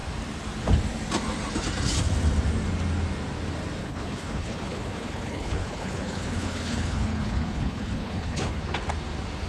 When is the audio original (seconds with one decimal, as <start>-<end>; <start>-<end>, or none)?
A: 0.0-3.8; 8.6-9.5